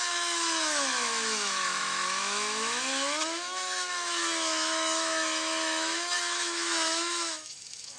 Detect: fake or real fake